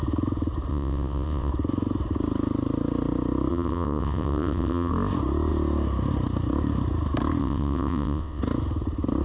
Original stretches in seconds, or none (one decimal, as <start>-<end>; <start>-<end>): 0.0-0.7; 1.5-3.5; 4.9-7.4; 8.4-9.2